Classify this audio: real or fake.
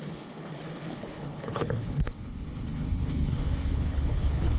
fake